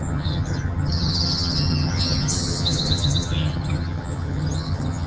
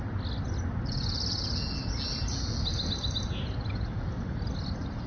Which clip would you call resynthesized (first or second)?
first